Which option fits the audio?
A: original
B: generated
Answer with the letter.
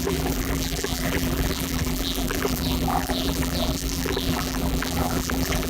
B